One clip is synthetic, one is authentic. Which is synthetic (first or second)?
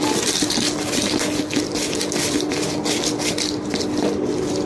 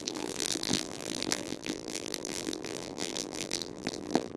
second